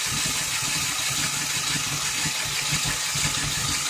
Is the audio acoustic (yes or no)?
yes